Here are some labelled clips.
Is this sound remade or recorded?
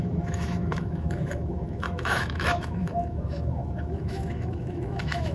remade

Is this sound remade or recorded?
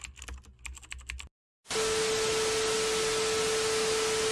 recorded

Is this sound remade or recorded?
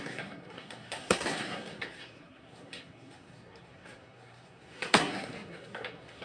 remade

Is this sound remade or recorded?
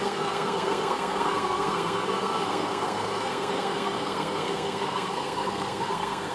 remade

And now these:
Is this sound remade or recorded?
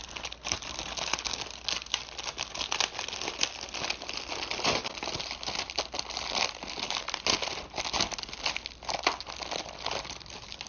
recorded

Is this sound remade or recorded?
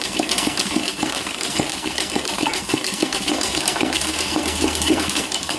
remade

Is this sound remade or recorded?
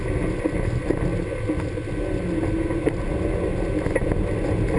recorded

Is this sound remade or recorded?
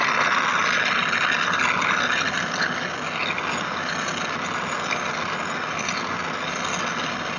recorded